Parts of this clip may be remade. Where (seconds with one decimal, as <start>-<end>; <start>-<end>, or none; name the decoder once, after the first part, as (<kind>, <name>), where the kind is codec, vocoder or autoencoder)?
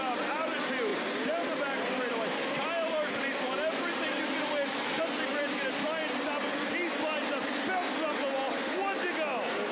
none